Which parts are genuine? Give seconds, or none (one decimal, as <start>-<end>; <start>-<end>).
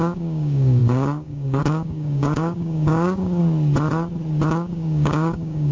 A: 3.4-4.5